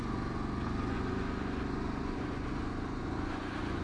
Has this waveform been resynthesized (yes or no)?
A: yes